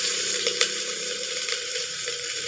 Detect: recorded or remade remade